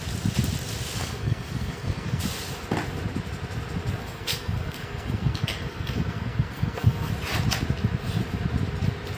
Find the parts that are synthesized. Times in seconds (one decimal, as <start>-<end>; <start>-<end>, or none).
1.0-2.2; 4.0-7.1